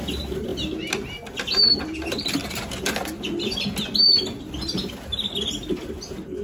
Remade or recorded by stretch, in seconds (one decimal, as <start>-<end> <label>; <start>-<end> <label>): 0.0-6.4 recorded